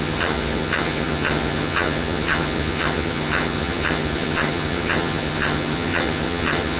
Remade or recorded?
remade